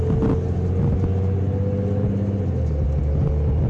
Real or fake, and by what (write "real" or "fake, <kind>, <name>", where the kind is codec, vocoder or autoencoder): real